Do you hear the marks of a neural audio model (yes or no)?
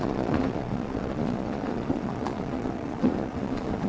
yes